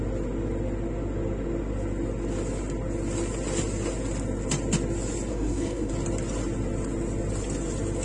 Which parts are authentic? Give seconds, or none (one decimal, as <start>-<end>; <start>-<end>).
0.0-5.3; 5.9-8.0